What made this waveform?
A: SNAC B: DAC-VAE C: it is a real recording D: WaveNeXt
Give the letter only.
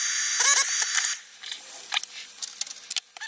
C